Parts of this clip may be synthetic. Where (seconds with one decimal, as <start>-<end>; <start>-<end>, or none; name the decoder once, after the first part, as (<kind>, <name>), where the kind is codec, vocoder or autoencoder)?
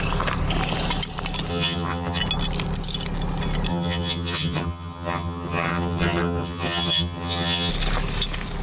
1.5-2.2 (vocoder, HiFi-GAN); 3.7-7.7